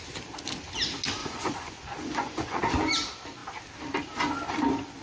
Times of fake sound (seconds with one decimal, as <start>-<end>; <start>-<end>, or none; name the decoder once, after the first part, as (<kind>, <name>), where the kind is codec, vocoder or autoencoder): 1.2-2.6 (vocoder, Vocos)